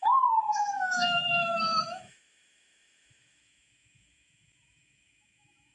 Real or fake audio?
fake